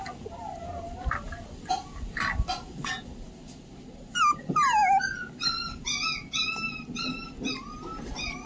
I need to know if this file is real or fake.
real